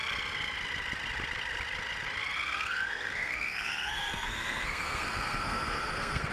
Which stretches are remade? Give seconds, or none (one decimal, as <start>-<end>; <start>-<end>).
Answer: 2.3-6.3